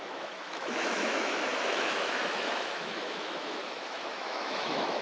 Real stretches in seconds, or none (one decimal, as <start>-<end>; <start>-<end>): none